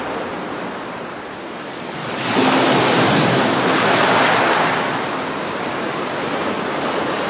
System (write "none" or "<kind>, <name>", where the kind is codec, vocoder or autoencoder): none